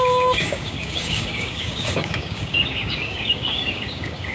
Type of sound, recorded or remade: remade